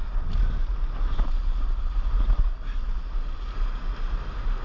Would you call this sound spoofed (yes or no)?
no